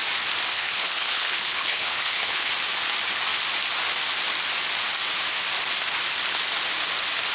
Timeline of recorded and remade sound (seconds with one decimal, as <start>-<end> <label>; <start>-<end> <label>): 0.0-0.5 recorded; 0.5-2.5 remade; 2.5-7.3 recorded